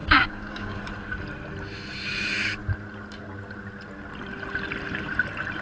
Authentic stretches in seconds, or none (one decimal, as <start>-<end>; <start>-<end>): 0.8-5.6